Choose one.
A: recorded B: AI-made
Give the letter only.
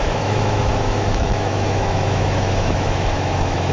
B